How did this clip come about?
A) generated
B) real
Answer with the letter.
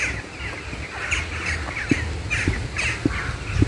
B